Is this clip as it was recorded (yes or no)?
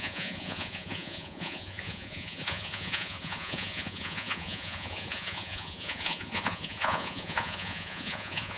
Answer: no